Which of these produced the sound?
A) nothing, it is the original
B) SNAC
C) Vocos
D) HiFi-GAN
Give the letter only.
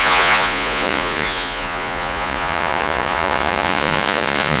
C